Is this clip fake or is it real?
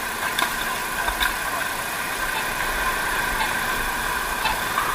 real